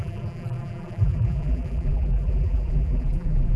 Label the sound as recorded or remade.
remade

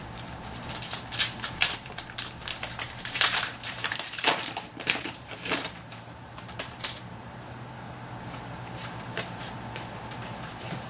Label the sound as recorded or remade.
remade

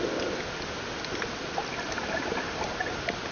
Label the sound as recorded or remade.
recorded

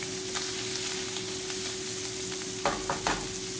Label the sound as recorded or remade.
recorded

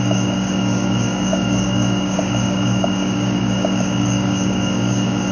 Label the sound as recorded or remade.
remade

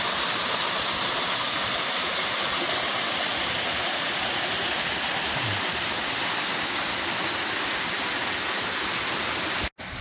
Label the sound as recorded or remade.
recorded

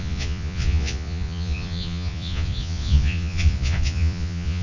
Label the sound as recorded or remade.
remade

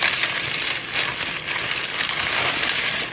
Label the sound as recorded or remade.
recorded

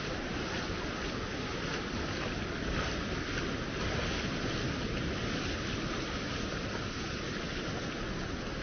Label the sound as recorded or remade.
recorded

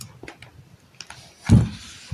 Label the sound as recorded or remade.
recorded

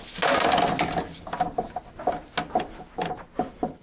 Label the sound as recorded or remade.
recorded